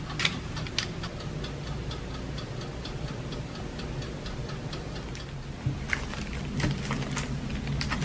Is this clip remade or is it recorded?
recorded